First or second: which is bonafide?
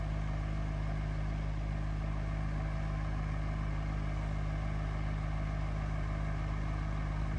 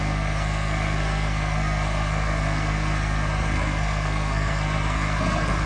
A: first